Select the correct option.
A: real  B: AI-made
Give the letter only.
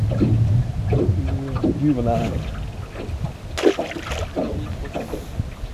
A